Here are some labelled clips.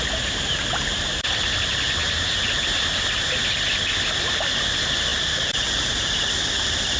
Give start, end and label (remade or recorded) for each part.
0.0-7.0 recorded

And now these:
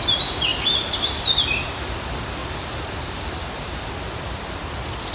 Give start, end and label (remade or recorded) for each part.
0.0-2.4 recorded; 2.4-3.9 remade; 3.9-5.1 recorded

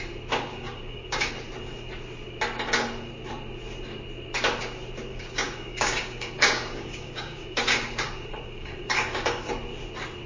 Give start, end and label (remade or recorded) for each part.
0.0-0.5 recorded; 0.5-1.3 remade; 1.3-5.1 recorded; 5.1-9.5 remade; 9.5-10.3 recorded

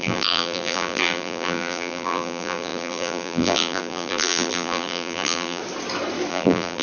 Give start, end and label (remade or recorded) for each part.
0.0-5.6 remade; 5.6-6.3 recorded; 6.3-6.8 remade

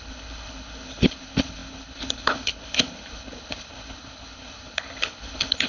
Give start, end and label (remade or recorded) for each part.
0.0-5.7 remade